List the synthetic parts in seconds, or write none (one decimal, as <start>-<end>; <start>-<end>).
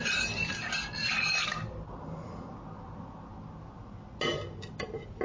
none